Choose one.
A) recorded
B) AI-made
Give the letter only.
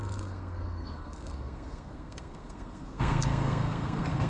B